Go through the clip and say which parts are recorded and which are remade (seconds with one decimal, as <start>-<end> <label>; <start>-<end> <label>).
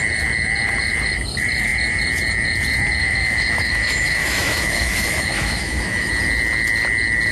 0.0-3.0 recorded; 3.0-6.1 remade; 6.1-7.3 recorded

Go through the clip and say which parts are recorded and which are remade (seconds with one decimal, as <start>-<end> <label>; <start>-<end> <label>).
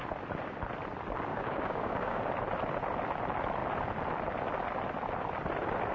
0.0-1.3 recorded; 1.3-2.2 remade; 2.2-5.9 recorded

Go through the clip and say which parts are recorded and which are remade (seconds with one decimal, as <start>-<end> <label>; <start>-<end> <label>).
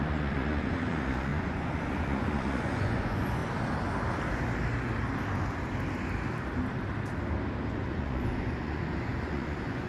0.0-3.4 remade; 3.4-7.7 recorded; 7.7-9.9 remade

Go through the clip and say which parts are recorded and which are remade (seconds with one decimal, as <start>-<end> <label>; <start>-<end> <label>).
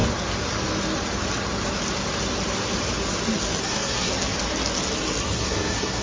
0.0-3.6 recorded; 3.6-4.1 remade; 4.1-5.2 recorded; 5.2-6.0 remade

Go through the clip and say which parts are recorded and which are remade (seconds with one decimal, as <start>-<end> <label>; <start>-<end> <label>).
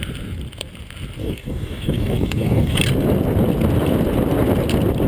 0.0-1.2 recorded; 1.2-2.8 remade; 2.8-5.1 recorded